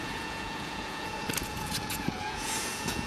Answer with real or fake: fake